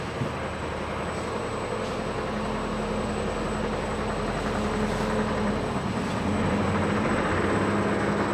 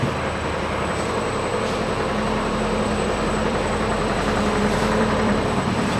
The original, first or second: first